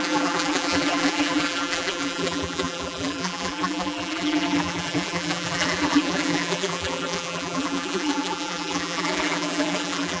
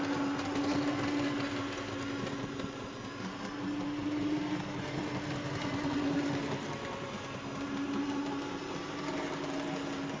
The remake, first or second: first